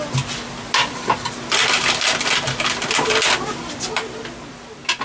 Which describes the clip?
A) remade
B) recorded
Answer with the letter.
B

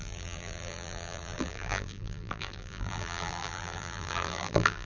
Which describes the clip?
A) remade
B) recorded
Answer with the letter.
A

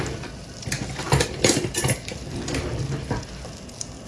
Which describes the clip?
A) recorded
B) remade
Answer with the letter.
B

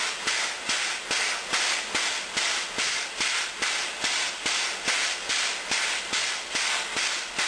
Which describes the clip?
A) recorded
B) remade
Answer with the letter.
A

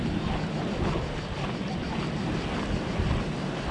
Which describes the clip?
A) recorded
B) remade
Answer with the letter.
A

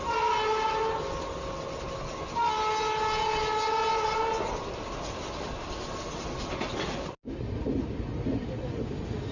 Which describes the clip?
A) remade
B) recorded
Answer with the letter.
B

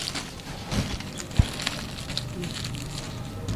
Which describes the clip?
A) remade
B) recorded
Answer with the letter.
B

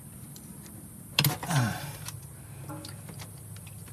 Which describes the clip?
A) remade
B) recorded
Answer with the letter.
B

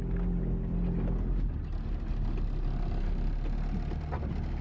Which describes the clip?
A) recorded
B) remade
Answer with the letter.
A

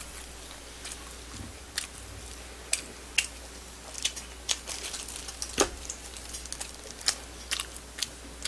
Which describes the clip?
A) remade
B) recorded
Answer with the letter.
B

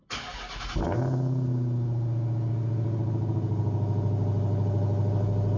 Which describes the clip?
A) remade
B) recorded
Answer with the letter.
B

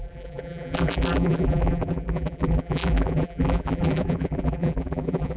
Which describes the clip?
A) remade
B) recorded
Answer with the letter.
A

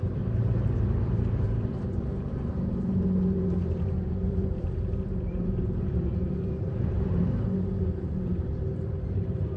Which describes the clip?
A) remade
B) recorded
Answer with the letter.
A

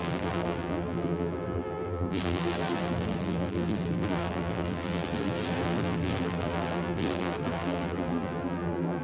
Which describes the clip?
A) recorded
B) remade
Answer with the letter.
B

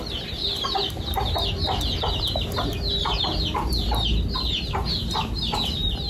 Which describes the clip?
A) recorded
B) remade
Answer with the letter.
A